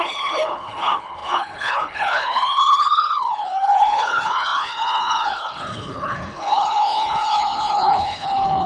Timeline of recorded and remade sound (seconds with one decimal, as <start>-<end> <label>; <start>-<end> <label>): 0.0-8.7 remade